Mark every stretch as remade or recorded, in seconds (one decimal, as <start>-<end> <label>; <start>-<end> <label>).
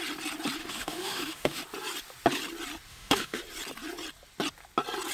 0.0-0.6 recorded; 0.6-1.6 remade; 1.6-2.9 recorded; 2.9-3.4 remade; 3.4-5.1 recorded